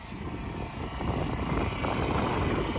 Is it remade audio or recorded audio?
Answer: recorded